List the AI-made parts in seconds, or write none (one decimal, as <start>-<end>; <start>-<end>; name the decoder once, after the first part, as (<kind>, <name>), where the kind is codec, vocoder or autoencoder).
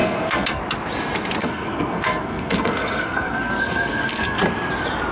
0.0-0.6 (codec, SNAC); 1.4-4.4